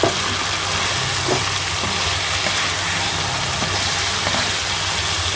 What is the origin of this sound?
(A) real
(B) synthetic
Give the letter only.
A